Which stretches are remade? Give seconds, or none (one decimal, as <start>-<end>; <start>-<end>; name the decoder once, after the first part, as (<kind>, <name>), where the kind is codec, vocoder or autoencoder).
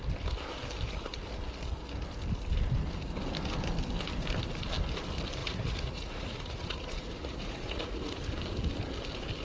5.4-8.2 (vocoder, Vocos)